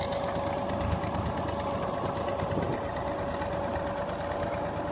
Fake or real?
real